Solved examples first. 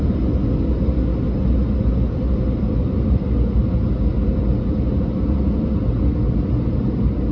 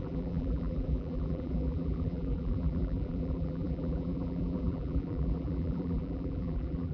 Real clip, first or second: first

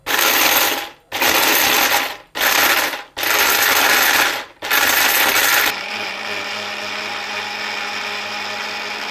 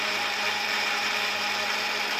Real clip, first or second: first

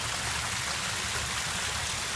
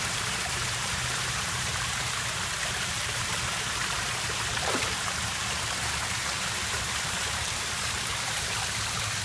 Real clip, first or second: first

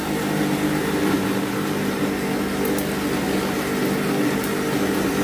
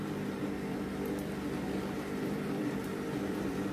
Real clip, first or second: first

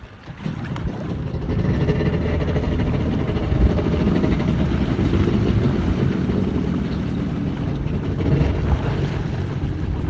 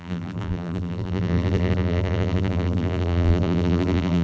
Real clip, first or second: first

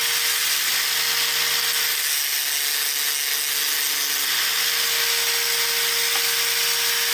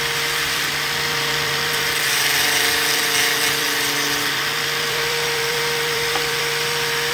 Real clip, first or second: first